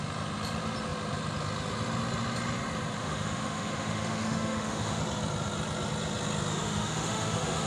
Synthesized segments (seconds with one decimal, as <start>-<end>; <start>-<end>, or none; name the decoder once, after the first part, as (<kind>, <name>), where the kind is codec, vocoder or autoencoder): 3.0-5.0 (autoencoder, DAC-VAE); 6.5-7.7